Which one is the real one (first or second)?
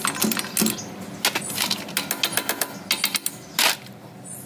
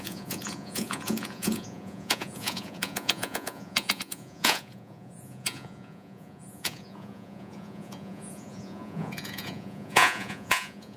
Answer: first